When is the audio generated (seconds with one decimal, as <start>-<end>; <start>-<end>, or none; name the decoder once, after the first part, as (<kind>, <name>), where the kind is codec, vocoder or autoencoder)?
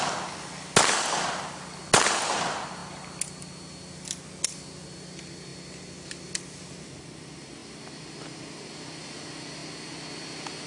none